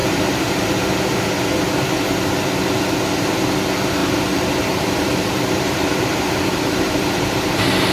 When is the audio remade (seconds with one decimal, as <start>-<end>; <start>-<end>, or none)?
0.0-0.7; 4.0-7.5